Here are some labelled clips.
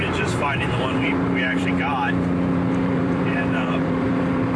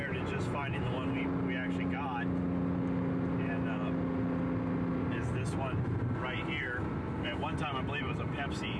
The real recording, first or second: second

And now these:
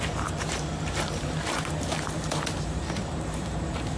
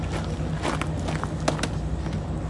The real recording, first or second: second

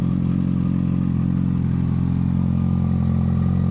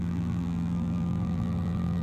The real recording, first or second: first